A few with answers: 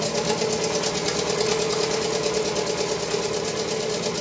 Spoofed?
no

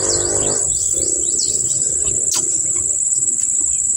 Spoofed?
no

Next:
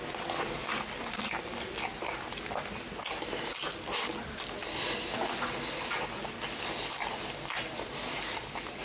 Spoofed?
no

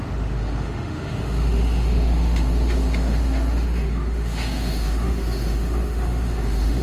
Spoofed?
yes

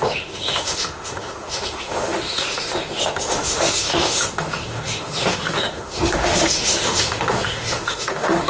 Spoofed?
yes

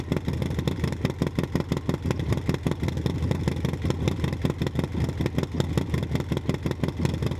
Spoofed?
no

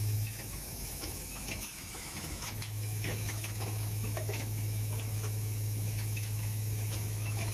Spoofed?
yes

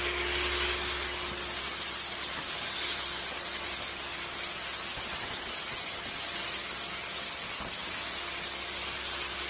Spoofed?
no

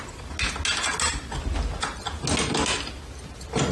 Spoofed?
no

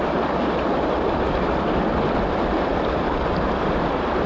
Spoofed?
no